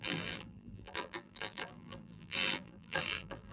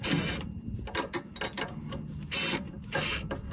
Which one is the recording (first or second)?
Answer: second